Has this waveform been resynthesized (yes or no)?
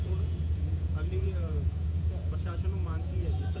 yes